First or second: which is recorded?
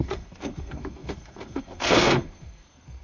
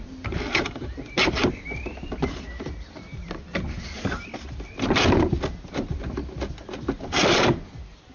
second